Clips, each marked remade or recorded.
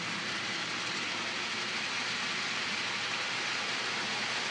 recorded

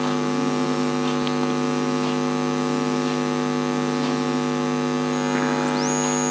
recorded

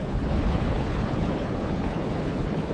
remade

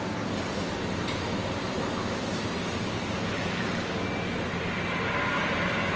recorded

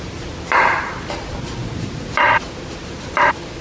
recorded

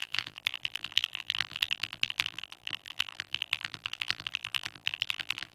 remade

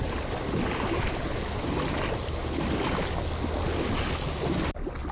recorded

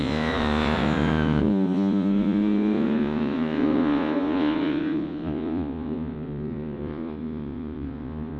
remade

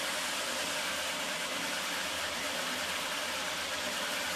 recorded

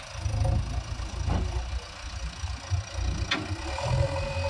recorded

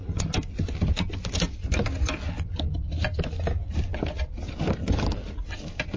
recorded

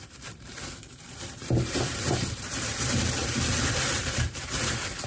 remade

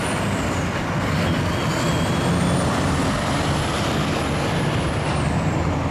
recorded